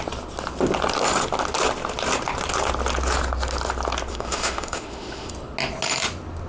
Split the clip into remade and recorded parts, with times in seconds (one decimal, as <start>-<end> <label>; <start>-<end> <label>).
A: 0.0-4.1 recorded; 4.1-5.3 remade; 5.3-6.5 recorded